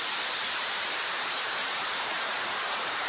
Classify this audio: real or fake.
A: fake